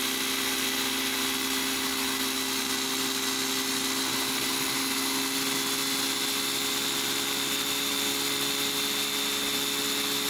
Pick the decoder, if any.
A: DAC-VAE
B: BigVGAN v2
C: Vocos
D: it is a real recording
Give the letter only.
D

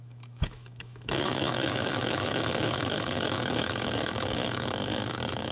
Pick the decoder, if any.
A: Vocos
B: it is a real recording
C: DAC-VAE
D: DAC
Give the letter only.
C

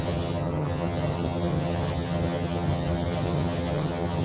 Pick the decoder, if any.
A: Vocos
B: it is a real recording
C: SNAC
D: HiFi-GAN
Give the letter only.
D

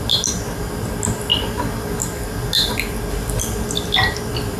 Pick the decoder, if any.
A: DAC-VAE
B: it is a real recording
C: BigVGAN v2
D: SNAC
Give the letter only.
B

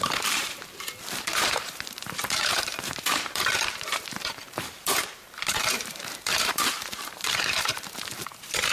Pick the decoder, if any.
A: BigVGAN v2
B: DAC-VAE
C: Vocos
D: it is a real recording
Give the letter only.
A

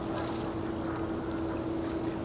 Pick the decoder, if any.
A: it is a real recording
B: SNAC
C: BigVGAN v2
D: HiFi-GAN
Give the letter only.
A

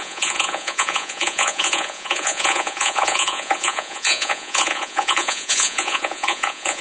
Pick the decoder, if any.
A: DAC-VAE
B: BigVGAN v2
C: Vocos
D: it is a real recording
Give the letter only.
C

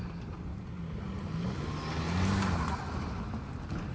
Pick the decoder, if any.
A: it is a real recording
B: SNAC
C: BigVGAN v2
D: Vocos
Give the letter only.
A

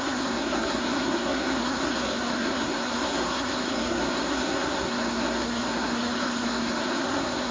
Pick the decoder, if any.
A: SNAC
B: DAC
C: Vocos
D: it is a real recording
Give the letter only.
A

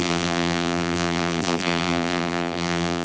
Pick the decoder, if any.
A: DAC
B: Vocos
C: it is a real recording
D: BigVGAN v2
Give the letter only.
D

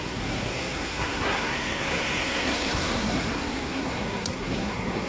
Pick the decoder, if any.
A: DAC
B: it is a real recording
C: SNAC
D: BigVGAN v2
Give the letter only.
C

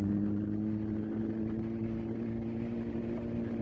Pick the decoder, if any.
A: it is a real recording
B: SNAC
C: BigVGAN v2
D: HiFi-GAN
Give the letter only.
A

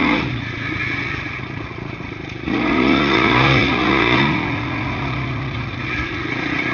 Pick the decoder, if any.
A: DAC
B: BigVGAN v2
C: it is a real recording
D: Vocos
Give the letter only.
D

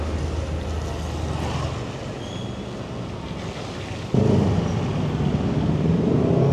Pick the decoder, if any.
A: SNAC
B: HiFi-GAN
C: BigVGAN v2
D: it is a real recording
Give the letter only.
D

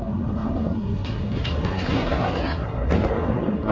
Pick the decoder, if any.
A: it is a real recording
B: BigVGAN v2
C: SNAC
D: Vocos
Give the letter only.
C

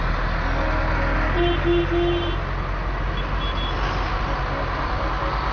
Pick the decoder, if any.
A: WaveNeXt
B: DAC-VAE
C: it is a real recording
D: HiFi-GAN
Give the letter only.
C